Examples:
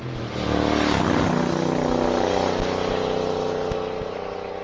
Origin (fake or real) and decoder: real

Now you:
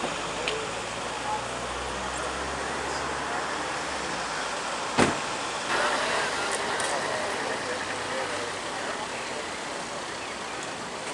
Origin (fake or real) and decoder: real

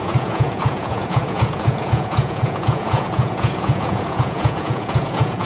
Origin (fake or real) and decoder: fake, vocoder, Vocos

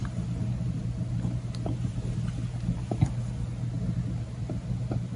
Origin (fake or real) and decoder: real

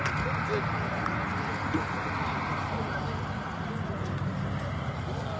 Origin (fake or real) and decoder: real